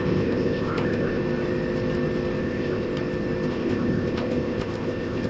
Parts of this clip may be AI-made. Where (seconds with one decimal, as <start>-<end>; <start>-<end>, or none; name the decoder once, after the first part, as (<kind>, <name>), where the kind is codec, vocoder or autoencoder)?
0.0-1.2 (codec, ZipCodec); 2.4-2.9; 3.5-5.3